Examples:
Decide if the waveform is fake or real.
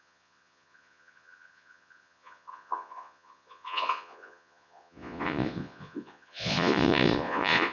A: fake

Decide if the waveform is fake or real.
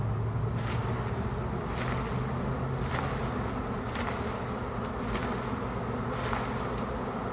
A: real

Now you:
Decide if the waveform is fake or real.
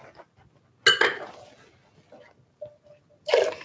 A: real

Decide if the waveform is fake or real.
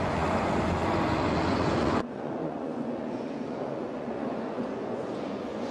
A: fake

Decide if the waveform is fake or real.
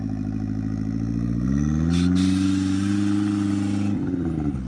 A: real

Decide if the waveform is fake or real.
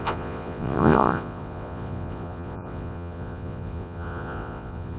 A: fake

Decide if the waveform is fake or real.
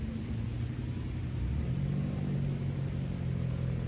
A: real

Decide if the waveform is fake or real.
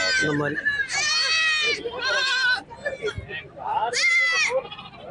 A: real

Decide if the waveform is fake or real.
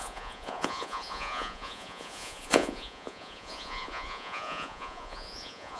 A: fake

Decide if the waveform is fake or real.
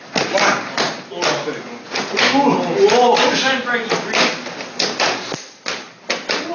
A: real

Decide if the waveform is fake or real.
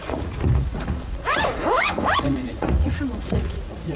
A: fake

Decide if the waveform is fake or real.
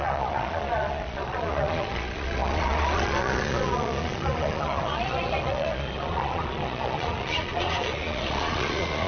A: fake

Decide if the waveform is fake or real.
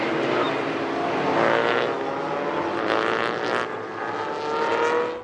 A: real